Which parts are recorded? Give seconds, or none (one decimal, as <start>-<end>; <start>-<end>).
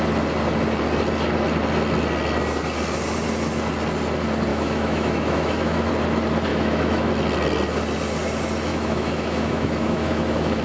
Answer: 0.0-4.5; 5.9-6.5; 7.1-8.7